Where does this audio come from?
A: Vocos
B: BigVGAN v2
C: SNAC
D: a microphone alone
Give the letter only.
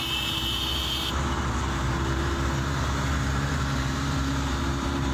B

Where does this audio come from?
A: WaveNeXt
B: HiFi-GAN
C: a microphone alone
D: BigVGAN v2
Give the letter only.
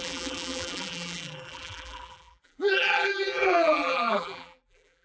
D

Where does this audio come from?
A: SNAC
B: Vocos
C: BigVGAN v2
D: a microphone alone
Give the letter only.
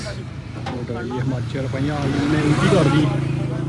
C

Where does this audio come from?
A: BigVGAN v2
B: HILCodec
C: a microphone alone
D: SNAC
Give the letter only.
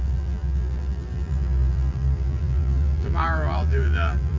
A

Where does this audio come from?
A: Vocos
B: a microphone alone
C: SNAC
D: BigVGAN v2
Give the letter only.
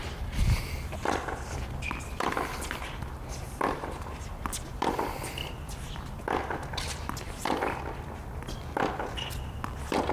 D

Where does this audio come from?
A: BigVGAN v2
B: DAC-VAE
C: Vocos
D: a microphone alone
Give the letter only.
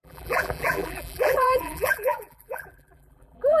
A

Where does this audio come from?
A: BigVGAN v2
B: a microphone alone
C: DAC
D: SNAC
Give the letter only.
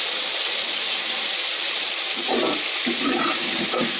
A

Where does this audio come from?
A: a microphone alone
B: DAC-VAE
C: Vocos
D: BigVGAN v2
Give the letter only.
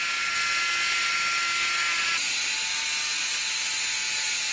A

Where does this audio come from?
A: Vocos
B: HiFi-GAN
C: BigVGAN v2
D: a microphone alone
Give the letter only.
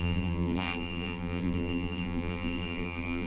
C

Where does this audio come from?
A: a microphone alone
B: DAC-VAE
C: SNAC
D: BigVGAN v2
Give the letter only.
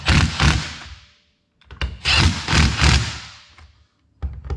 A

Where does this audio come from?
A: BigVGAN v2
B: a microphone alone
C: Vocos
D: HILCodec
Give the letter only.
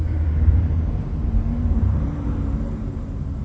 A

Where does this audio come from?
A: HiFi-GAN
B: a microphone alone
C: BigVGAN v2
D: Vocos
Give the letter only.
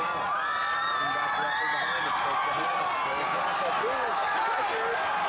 B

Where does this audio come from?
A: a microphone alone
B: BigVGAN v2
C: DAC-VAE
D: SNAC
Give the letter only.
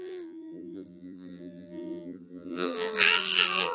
B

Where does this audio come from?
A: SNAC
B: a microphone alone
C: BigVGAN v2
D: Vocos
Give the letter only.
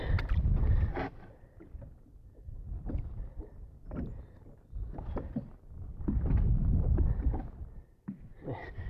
B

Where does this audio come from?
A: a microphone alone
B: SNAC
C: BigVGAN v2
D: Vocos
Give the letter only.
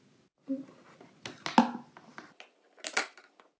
A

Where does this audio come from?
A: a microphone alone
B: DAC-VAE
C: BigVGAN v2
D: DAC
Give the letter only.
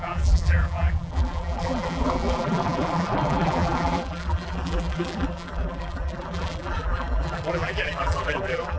C